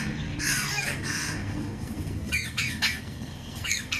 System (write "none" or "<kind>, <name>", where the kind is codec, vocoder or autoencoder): codec, SNAC